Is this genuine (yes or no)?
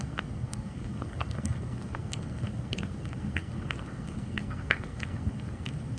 no